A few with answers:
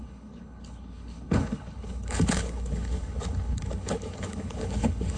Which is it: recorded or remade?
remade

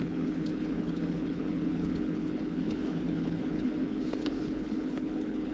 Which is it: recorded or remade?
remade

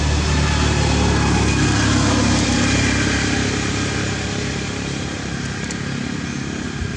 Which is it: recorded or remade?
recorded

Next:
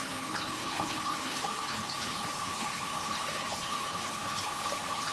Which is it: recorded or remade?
remade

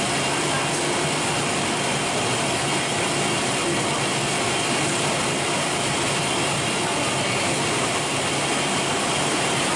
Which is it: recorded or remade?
recorded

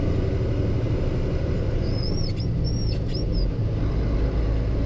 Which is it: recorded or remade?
recorded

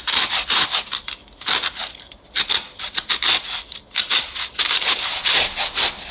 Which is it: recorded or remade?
recorded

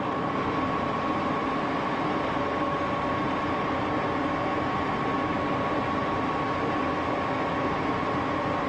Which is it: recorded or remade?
recorded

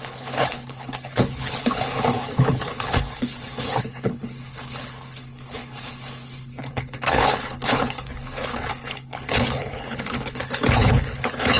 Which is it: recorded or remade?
remade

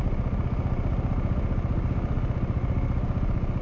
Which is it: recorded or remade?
recorded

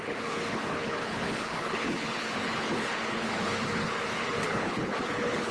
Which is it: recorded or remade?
remade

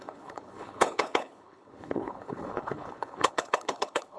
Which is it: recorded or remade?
remade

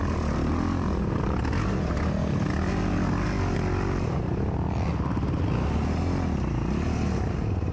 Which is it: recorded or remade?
recorded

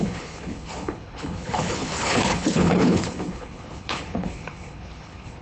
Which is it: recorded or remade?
remade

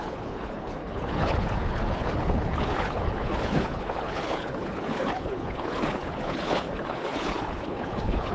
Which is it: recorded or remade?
remade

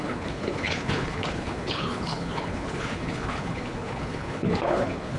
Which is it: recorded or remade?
remade